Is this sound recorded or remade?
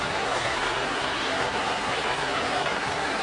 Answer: remade